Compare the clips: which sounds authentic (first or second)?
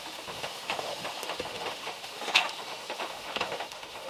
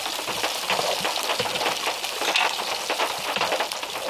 second